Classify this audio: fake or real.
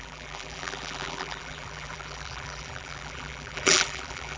fake